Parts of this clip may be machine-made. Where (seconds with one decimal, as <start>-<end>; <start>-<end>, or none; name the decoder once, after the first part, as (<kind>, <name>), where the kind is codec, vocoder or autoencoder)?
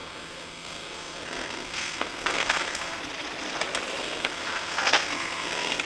0.0-3.0 (codec, SNAC); 4.0-5.8